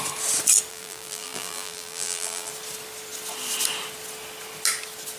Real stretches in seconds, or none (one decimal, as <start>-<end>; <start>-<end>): 0.0-0.7; 2.5-5.2